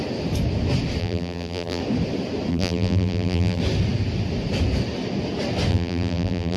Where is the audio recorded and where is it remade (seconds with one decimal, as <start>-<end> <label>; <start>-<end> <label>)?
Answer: 0.0-1.0 recorded; 1.0-1.8 remade; 1.8-2.5 recorded; 2.5-3.6 remade; 3.6-5.7 recorded; 5.7-6.6 remade